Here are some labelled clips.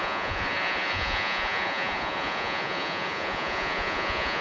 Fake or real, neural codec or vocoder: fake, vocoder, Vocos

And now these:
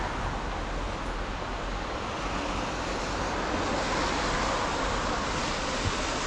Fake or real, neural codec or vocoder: real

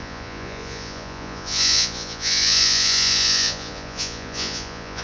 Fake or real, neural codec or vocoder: fake, vocoder, Vocos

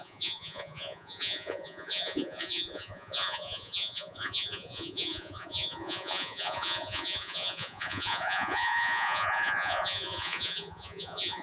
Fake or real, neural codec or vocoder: fake, vocoder, Vocos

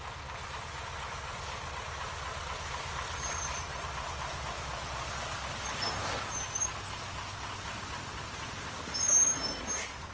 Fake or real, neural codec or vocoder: real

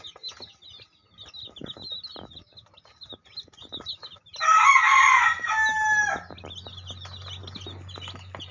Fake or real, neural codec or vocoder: real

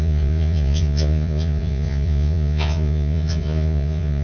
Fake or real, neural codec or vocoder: fake, vocoder, Vocos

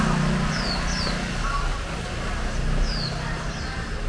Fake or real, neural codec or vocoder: real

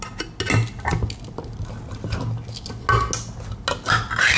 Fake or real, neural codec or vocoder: real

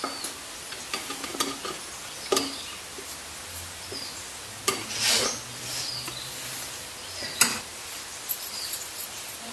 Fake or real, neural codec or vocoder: real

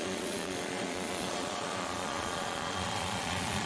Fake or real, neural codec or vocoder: fake, vocoder, Vocos